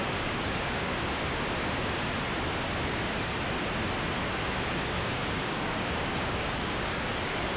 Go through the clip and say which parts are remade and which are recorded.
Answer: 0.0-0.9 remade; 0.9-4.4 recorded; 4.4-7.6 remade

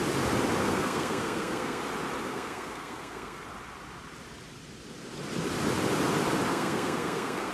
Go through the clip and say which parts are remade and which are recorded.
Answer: 0.0-0.6 recorded; 0.6-1.8 remade; 1.8-2.3 recorded; 2.3-3.4 remade; 3.4-6.5 recorded; 6.5-7.5 remade